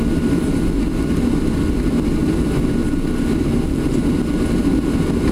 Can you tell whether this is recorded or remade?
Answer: recorded